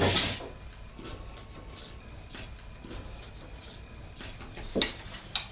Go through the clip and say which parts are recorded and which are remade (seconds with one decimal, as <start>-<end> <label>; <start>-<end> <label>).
0.0-0.9 recorded; 0.9-2.0 remade; 2.0-5.5 recorded